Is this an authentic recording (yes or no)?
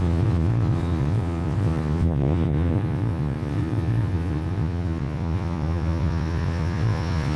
no